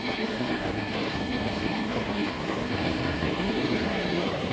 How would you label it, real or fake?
fake